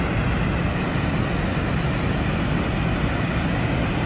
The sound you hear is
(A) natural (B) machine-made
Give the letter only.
A